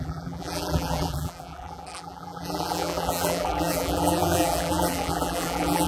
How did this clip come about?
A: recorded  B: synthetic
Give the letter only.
B